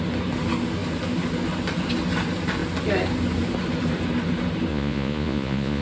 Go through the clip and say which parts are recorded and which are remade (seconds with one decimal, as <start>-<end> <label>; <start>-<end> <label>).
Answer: 0.0-4.7 recorded; 4.7-5.8 remade